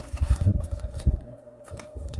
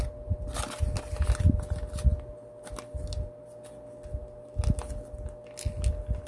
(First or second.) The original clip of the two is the second